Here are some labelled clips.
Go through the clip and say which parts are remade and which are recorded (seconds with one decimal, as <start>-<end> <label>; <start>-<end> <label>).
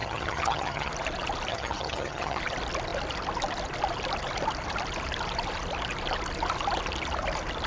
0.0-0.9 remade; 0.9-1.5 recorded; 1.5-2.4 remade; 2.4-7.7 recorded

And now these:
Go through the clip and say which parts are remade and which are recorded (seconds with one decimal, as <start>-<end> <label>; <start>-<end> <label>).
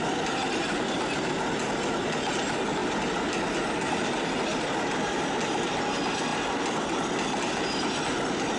0.0-0.6 recorded; 0.6-1.2 remade; 1.2-8.6 recorded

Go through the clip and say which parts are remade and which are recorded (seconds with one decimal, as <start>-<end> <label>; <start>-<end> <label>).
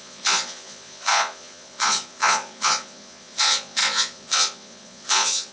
0.0-5.5 remade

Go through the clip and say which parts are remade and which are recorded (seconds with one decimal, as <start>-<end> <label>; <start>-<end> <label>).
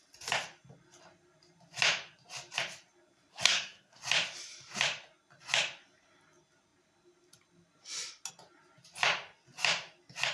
0.0-3.3 recorded; 3.3-4.0 remade; 4.0-10.3 recorded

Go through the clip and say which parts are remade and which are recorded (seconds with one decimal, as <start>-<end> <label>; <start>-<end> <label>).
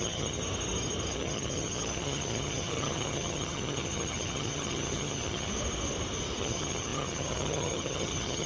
0.0-0.4 remade; 0.4-1.1 recorded; 1.1-5.5 remade; 5.5-6.4 recorded; 6.4-8.5 remade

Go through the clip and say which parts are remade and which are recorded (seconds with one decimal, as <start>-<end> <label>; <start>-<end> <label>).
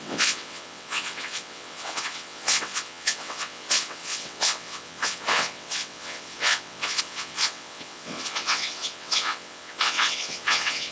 0.0-10.9 remade